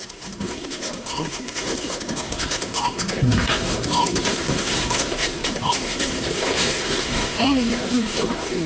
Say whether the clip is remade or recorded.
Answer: remade